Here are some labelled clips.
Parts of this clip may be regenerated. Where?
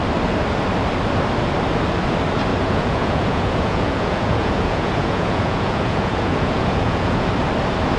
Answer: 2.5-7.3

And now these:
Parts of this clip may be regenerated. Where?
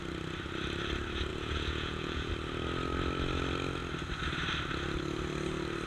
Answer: 1.3-2.3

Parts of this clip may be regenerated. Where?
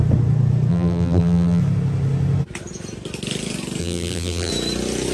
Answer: 0.7-1.6; 3.8-4.5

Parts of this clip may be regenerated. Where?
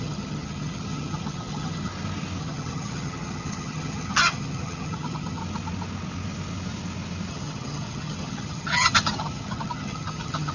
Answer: 0.0-1.9; 2.4-5.4; 7.3-10.5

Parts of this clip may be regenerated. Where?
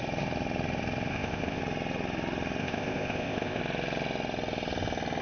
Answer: 1.1-1.6; 2.6-3.6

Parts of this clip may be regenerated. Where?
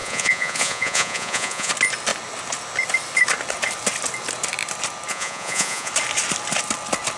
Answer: 0.0-1.7; 5.1-5.9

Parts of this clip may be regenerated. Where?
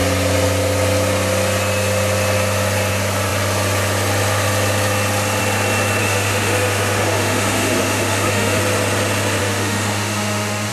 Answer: 6.0-8.6; 9.4-10.7